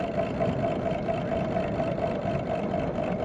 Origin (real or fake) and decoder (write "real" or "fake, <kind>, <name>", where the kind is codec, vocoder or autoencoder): fake, vocoder, BigVGAN v2